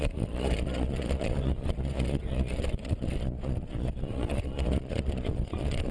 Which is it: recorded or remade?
remade